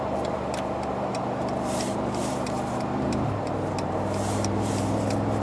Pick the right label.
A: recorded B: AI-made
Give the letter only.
B